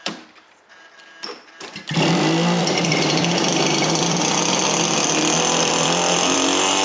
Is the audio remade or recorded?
remade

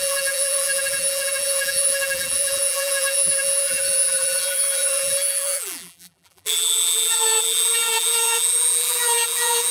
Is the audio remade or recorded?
remade